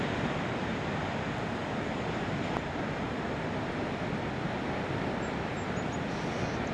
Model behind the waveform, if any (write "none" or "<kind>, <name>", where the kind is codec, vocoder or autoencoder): none